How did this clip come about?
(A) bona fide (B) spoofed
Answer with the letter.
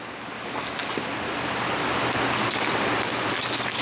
A